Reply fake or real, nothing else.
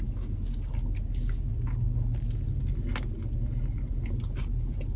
real